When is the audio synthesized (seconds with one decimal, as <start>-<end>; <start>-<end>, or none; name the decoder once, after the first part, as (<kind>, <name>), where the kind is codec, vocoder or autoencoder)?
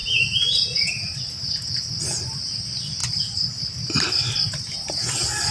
none